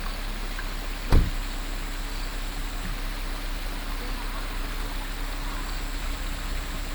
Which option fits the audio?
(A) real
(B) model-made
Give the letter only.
A